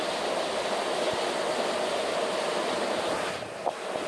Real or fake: real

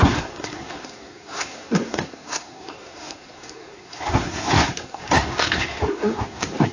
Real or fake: fake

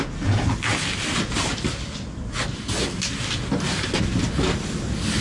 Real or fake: real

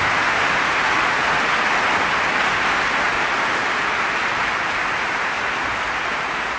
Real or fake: real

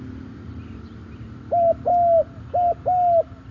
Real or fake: real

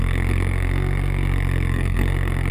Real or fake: fake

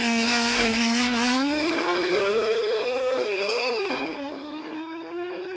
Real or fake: fake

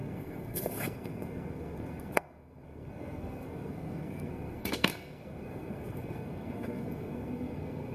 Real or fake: fake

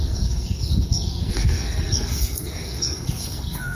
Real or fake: fake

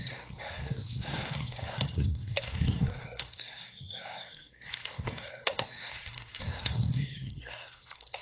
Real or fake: fake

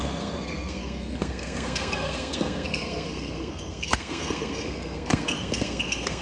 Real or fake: fake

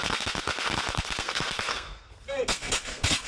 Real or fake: fake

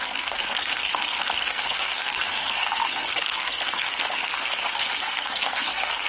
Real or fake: fake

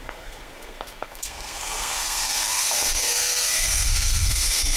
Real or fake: fake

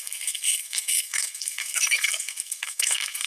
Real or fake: fake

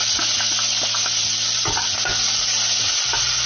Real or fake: real